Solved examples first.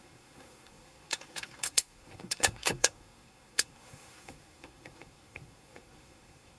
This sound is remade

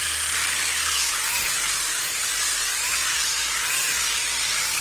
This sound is remade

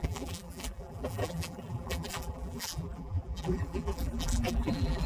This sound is remade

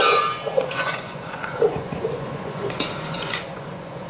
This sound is remade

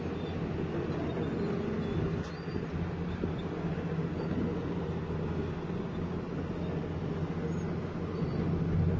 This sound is recorded